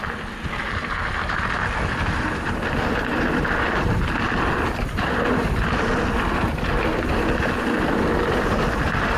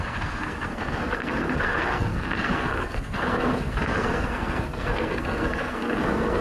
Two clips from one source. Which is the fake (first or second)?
second